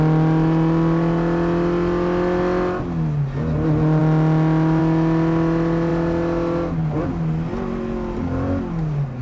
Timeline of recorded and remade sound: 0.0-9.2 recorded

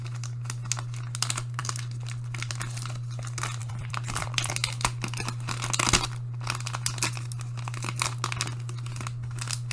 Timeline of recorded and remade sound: 0.0-3.6 recorded; 3.6-4.5 remade; 4.5-9.7 recorded

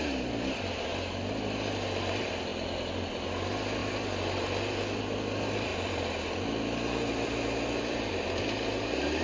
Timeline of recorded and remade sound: 0.0-3.8 recorded; 3.8-5.0 remade; 5.0-5.7 recorded; 5.7-8.4 remade; 8.4-9.2 recorded